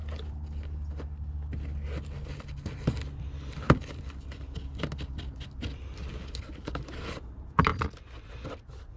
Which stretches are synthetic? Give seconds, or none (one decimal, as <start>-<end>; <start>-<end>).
none